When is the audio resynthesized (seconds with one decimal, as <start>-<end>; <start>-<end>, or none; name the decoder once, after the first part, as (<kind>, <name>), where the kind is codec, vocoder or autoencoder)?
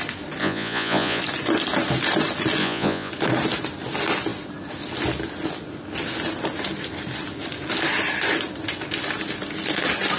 0.4-1.2 (vocoder, Vocos); 2.6-3.1